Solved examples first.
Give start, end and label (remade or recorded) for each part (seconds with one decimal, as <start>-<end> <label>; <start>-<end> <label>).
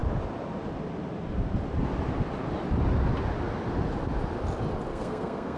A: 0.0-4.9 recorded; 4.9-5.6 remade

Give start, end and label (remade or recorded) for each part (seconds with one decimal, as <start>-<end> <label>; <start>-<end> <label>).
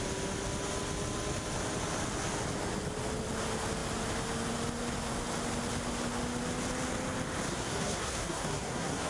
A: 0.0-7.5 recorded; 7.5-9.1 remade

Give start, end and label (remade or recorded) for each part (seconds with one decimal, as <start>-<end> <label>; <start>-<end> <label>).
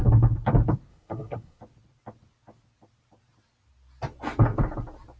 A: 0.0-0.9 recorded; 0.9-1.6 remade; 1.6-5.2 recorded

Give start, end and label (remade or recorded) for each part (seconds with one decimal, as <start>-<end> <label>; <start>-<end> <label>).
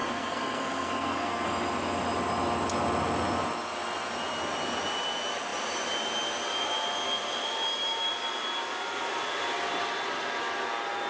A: 0.0-1.5 remade; 1.5-11.1 recorded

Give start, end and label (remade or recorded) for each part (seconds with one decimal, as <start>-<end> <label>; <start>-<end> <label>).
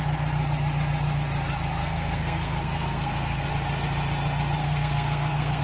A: 0.0-1.8 recorded; 1.8-3.5 remade; 3.5-4.6 recorded; 4.6-5.6 remade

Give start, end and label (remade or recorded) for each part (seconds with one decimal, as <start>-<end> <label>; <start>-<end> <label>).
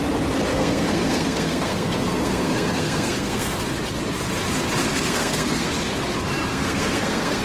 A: 0.0-0.5 recorded; 0.5-3.6 remade; 3.6-4.8 recorded; 4.8-5.7 remade; 5.7-6.5 recorded; 6.5-7.4 remade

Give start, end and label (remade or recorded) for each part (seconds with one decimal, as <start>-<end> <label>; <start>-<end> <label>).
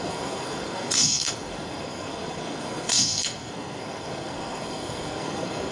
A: 0.0-5.7 remade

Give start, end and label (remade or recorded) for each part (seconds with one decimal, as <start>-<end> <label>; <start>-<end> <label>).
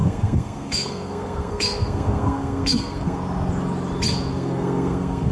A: 0.0-3.2 remade; 3.2-4.3 recorded; 4.3-5.3 remade